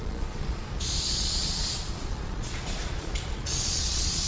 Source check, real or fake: fake